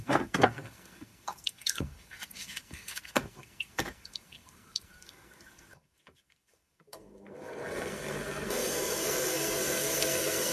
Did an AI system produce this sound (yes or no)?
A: yes